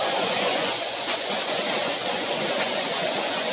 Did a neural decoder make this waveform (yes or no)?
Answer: yes